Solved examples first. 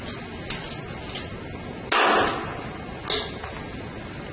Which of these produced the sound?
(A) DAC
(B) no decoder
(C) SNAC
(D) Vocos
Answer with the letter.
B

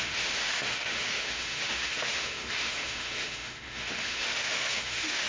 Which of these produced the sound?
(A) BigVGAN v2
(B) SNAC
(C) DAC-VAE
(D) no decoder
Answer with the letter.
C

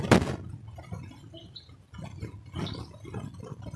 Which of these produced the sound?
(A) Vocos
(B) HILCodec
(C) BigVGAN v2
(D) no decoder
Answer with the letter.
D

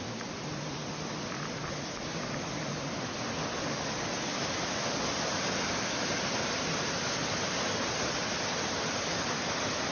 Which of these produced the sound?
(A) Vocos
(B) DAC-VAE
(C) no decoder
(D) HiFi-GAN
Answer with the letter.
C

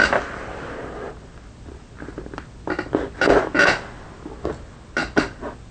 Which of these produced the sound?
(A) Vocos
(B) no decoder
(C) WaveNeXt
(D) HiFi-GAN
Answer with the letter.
B